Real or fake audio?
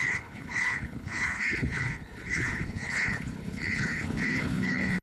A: fake